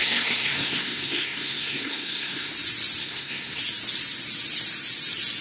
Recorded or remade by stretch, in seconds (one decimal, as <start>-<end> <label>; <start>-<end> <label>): 0.0-2.5 remade; 2.5-3.0 recorded; 3.0-3.6 remade; 3.6-5.4 recorded